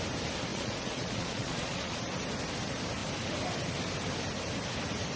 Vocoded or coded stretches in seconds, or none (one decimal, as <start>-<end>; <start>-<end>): 0.5-2.0